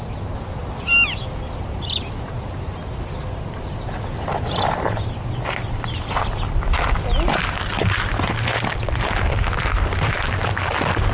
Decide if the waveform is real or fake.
real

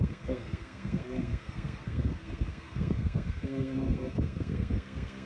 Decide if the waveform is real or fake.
fake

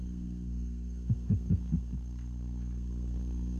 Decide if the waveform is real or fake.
fake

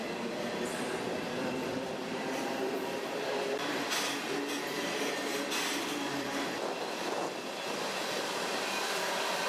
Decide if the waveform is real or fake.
fake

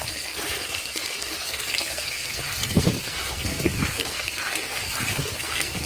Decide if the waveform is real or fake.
fake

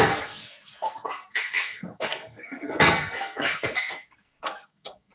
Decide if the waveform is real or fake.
fake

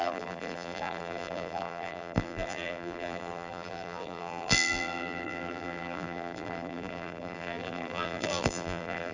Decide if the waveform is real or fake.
fake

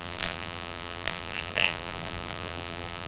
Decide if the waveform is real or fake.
fake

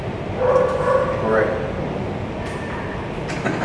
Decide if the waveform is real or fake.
real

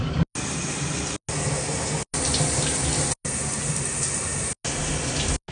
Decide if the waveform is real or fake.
real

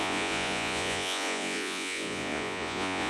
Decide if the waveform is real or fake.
fake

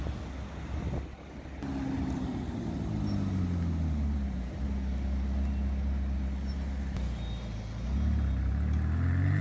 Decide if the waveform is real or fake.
real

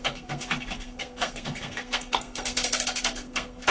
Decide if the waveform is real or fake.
fake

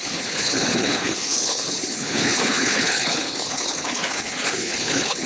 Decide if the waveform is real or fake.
fake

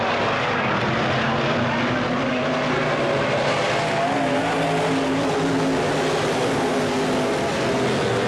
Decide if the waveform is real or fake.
real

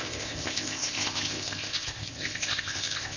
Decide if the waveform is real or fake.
fake